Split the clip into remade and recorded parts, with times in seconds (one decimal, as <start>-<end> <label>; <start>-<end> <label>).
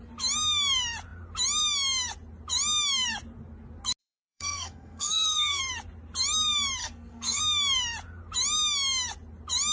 0.0-4.0 recorded; 4.0-5.6 remade; 5.6-6.8 recorded; 6.8-7.4 remade; 7.4-9.7 recorded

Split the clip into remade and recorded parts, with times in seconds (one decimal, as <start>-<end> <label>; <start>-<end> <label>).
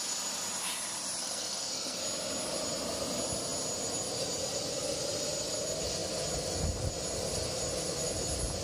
0.0-1.2 recorded; 1.2-2.0 remade; 2.0-8.6 recorded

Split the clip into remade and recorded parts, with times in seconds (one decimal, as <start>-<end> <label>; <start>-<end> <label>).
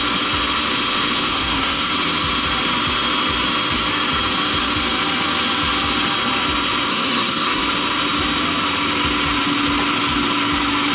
0.0-1.3 recorded; 1.3-1.9 remade; 1.9-6.9 recorded; 6.9-7.6 remade; 7.6-10.9 recorded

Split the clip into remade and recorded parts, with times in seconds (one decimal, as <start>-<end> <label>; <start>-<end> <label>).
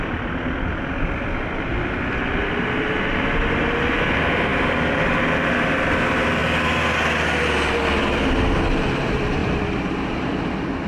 0.0-10.9 recorded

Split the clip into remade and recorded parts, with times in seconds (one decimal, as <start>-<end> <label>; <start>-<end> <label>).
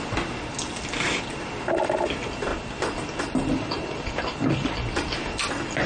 0.0-5.9 recorded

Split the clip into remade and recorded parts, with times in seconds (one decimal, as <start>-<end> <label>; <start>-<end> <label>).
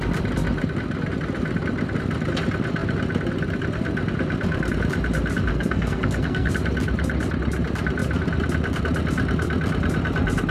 0.0-5.5 recorded; 5.5-6.5 remade; 6.5-10.5 recorded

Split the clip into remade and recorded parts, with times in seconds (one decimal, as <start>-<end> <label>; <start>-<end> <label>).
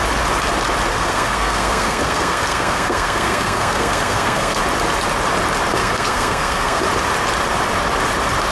0.0-0.9 recorded; 0.9-4.6 remade; 4.6-5.8 recorded; 5.8-6.8 remade; 6.8-8.5 recorded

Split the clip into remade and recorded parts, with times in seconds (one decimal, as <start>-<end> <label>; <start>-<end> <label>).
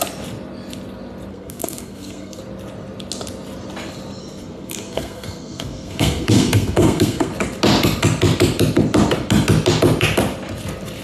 0.0-1.3 recorded; 1.3-2.4 remade; 2.4-4.2 recorded; 4.2-7.3 remade; 7.3-11.0 recorded